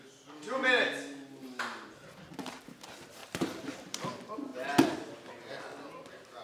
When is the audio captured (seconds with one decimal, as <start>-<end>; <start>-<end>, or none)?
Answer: 0.0-3.2; 4.0-6.4